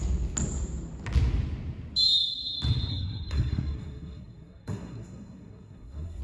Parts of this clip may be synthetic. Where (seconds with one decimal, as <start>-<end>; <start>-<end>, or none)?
2.9-6.2